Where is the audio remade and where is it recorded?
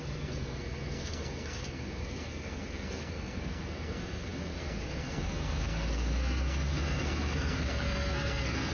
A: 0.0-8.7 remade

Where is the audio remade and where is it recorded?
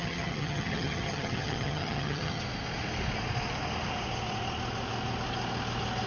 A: 0.0-2.4 remade; 2.4-6.1 recorded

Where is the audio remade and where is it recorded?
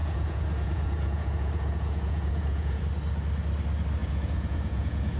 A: 0.0-2.8 remade; 2.8-4.0 recorded; 4.0-5.2 remade